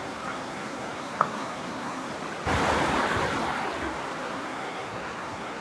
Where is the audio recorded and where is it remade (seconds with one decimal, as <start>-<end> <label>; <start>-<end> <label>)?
0.0-2.1 remade; 2.1-4.2 recorded; 4.2-5.6 remade